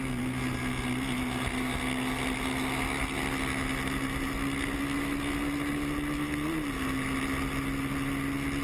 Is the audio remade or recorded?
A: recorded